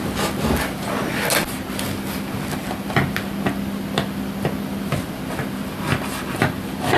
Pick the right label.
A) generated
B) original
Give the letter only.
B